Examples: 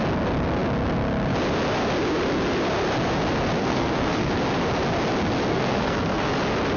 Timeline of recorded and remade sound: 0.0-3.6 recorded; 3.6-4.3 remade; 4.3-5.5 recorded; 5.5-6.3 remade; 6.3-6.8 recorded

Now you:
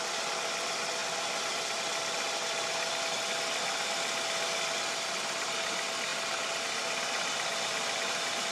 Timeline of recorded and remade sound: 0.0-8.5 recorded

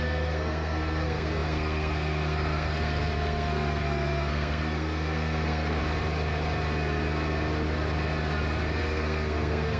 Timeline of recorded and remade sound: 0.0-5.8 remade; 5.8-8.8 recorded; 8.8-9.8 remade

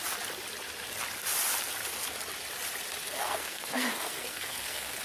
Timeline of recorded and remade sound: 0.0-3.0 recorded; 3.0-5.0 remade

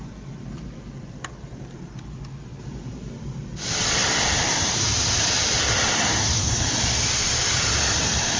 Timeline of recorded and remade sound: 0.0-8.4 recorded

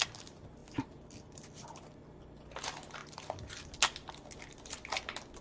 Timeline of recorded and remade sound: 0.0-5.4 recorded

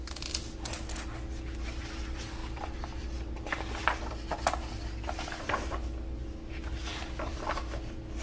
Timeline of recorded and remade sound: 0.0-8.2 recorded